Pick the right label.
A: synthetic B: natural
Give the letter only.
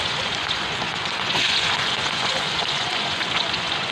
A